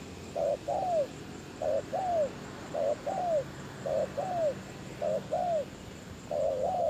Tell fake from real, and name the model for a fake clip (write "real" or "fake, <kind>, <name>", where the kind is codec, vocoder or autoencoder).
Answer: real